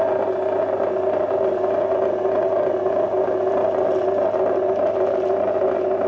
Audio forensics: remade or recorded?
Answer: recorded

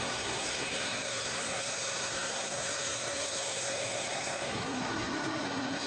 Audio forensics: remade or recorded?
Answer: remade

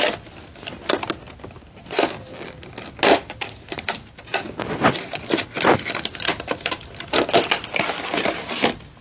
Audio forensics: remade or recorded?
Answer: recorded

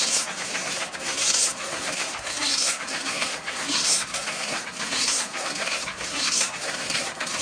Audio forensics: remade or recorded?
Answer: remade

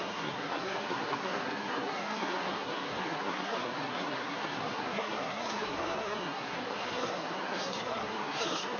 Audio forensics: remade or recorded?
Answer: remade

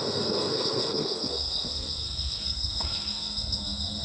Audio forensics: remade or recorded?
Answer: remade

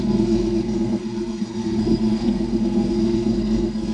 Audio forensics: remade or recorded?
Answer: remade